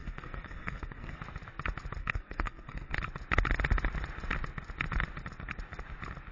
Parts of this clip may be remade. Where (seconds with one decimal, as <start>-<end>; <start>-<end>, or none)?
0.0-1.2; 2.0-3.0